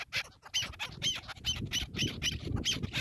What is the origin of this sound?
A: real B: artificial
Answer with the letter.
A